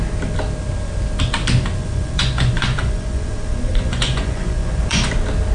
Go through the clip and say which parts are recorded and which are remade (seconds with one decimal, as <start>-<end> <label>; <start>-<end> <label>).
0.0-1.8 recorded; 1.8-5.1 remade; 5.1-5.5 recorded